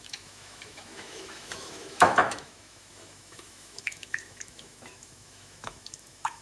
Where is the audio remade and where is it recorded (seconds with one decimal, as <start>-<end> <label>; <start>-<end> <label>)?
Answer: 0.0-6.4 remade